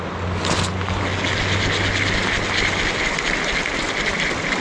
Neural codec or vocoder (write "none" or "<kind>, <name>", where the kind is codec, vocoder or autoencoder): none